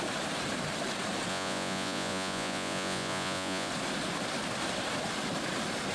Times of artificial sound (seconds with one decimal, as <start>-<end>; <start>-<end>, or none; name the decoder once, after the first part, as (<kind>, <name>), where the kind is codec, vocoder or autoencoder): 1.3-3.7 (vocoder, Vocos)